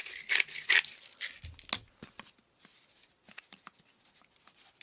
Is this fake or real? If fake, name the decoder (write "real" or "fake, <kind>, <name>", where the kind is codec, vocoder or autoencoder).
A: real